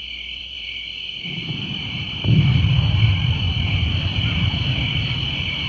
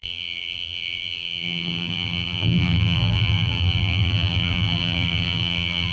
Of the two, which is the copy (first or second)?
second